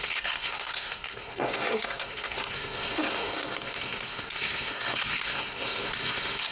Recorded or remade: remade